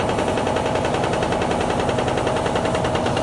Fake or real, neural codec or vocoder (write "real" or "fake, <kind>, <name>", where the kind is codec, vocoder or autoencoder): real